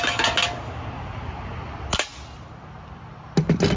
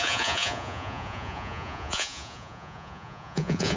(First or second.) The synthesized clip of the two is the second